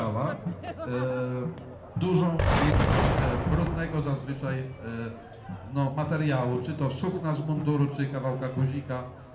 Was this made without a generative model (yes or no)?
yes